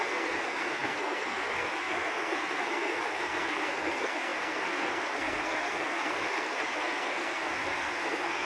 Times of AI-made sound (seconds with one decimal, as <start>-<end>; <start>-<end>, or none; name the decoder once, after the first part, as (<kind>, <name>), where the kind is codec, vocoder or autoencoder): 0.0-8.5 (codec, SNAC)